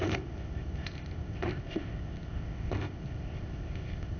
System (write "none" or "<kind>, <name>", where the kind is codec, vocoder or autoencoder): codec, ZipCodec